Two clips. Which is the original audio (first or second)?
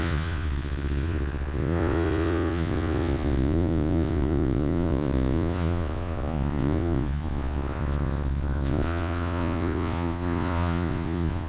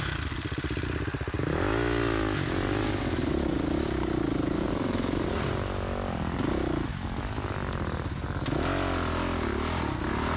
second